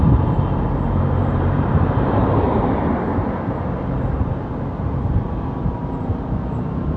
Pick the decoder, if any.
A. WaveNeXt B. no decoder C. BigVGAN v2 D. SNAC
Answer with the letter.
C